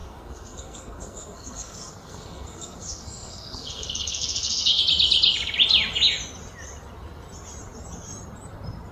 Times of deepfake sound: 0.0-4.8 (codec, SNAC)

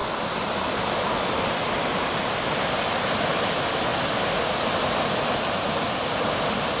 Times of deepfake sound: none

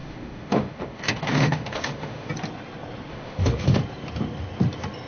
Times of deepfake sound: 0.0-2.3 (autoencoder, DAC-VAE); 3.1-3.8